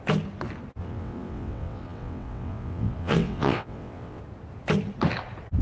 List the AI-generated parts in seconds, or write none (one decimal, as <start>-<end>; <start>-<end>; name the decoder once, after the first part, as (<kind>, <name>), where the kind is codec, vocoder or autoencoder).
0.8-4.2 (vocoder, WaveNeXt)

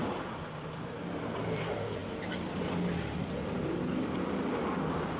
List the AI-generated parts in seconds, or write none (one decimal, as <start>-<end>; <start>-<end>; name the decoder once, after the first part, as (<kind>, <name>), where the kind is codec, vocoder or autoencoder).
none

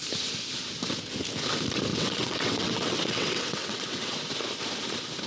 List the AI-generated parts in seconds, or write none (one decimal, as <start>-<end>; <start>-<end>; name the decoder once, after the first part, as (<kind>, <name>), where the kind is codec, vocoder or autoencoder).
1.9-4.2 (vocoder, WaveNeXt)